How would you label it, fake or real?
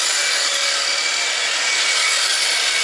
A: real